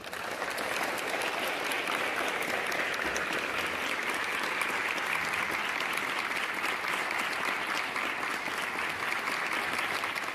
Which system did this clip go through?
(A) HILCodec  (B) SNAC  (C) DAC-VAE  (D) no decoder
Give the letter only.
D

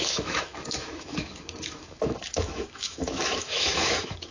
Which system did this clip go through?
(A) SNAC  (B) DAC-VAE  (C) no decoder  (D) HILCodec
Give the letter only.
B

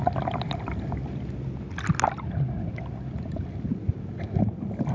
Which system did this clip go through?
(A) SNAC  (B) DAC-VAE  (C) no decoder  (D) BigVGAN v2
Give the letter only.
C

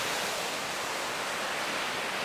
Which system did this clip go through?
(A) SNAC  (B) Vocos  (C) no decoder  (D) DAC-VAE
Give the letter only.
C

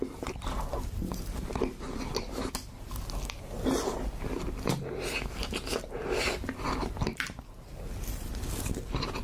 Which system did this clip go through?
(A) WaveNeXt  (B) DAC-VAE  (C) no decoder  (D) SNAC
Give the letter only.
C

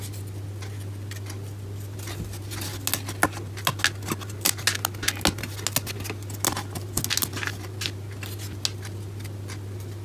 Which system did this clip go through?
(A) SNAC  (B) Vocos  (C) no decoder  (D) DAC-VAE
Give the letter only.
C